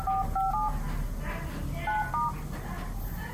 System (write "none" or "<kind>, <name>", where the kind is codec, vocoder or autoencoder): none